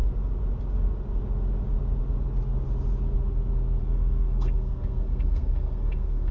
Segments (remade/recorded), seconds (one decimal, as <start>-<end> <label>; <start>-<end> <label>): 0.0-3.8 recorded; 3.8-6.3 remade